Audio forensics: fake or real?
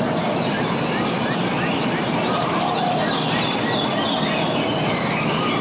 real